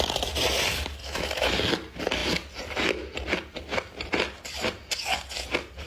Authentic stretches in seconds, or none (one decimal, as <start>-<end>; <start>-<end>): 0.0-1.0; 1.5-5.9